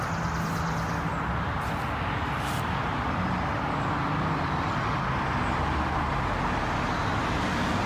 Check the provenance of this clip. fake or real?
real